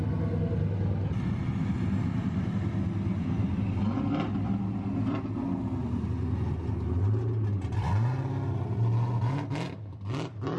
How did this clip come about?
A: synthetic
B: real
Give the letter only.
B